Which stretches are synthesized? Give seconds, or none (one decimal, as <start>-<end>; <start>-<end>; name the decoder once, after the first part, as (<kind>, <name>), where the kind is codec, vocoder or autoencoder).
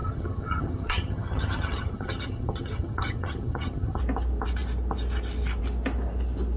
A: 0.0-4.0 (vocoder, HiFi-GAN)